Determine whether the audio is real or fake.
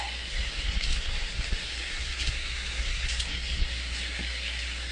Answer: fake